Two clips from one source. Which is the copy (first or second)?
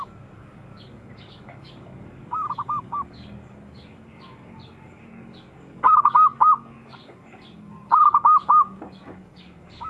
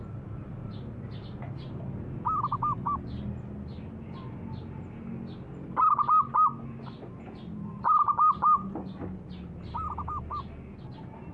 first